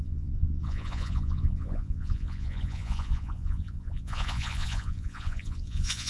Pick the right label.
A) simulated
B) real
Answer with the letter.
A